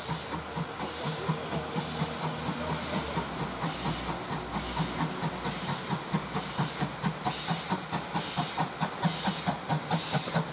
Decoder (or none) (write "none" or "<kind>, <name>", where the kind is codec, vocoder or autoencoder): none